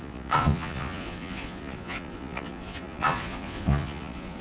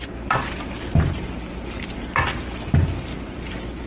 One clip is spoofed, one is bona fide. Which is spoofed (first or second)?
first